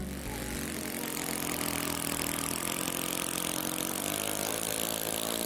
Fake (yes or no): no